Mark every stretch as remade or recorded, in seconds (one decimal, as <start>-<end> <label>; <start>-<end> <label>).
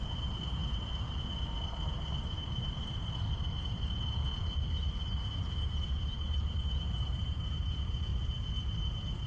0.0-0.6 remade; 0.6-4.7 recorded; 4.7-8.1 remade; 8.1-9.3 recorded